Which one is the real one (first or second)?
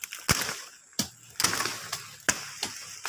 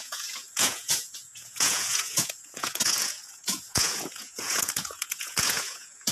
first